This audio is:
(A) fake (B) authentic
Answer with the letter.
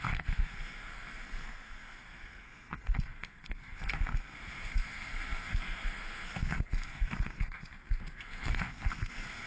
A